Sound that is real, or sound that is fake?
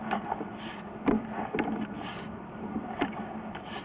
real